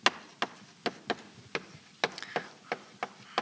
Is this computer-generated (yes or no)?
no